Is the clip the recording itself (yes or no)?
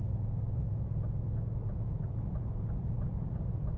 no